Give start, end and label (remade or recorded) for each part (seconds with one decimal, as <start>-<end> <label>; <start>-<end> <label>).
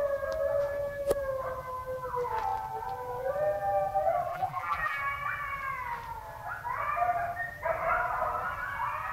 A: 0.0-4.3 recorded; 4.3-5.0 remade; 5.0-9.1 recorded